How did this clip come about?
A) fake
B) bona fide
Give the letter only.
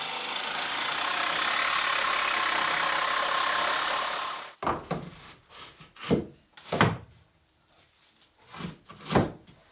B